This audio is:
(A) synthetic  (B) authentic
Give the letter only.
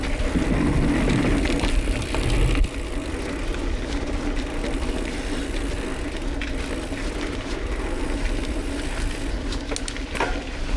B